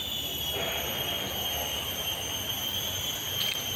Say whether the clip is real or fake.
real